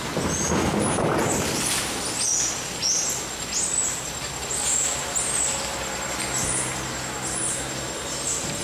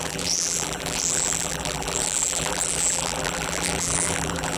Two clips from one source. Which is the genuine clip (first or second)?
first